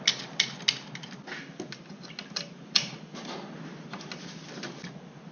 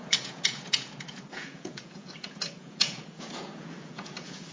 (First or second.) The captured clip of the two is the first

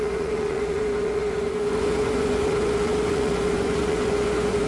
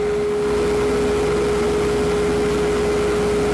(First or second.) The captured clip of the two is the second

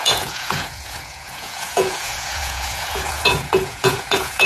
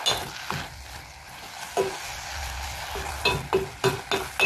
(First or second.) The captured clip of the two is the second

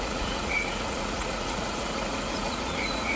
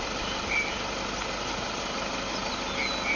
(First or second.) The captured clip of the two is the second